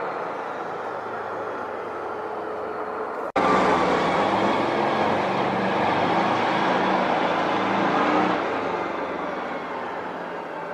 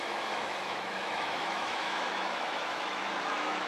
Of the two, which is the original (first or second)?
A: first